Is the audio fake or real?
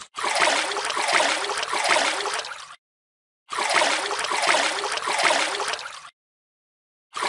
real